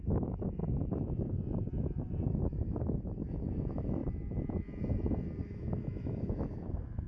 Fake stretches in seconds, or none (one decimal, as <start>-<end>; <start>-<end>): 0.0-0.6; 2.4-4.0; 5.4-7.1

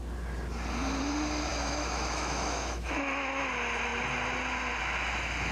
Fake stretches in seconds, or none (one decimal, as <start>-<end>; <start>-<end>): 1.5-3.5

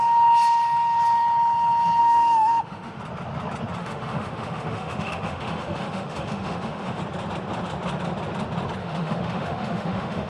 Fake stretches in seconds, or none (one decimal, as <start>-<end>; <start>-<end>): 2.0-3.0; 3.8-7.0; 8.8-10.3

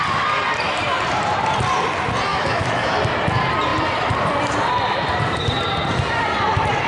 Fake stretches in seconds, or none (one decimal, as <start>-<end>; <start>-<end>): 2.3-3.0

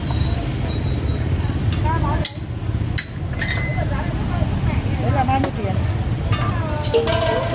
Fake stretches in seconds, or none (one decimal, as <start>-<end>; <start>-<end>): none

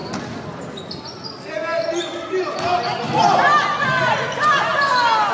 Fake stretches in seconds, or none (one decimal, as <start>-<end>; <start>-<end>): none